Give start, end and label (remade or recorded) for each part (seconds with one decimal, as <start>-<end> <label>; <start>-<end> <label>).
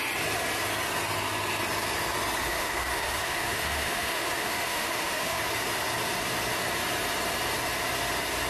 0.0-2.4 recorded; 2.4-5.4 remade; 5.4-8.5 recorded